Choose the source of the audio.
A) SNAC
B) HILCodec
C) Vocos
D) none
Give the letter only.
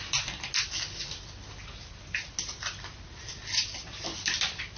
D